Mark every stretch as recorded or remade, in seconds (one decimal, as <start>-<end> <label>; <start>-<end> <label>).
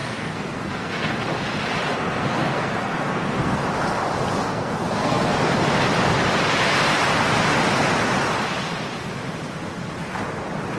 0.0-1.2 remade; 1.2-1.9 recorded; 1.9-3.6 remade; 3.6-4.5 recorded; 4.5-5.5 remade; 5.5-10.8 recorded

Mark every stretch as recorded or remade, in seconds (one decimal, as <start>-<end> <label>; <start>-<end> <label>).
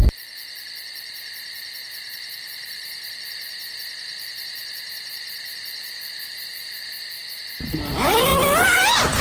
0.0-7.2 remade; 7.2-7.9 recorded; 7.9-8.3 remade; 8.3-9.2 recorded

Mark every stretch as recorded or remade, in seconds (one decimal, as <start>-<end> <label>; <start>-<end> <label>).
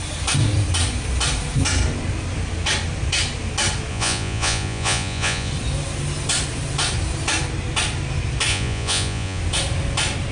0.0-3.9 recorded; 3.9-5.5 remade; 5.5-8.5 recorded; 8.5-9.4 remade; 9.4-10.3 recorded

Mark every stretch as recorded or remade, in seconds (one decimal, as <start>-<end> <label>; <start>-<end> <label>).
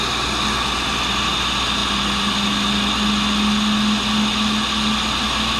0.0-5.6 recorded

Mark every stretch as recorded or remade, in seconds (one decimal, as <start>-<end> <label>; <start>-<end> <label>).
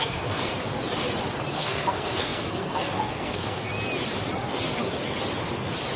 0.0-0.5 remade; 0.5-1.5 recorded; 1.5-3.7 remade; 3.7-6.0 recorded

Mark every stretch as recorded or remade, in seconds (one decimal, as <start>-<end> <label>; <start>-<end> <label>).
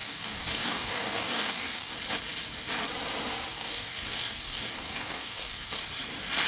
0.0-1.9 remade; 1.9-3.5 recorded; 3.5-5.7 remade; 5.7-6.5 recorded